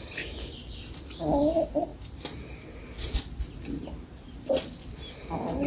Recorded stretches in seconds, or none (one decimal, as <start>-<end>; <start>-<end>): 0.0-5.7